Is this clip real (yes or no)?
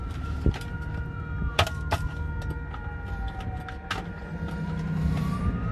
yes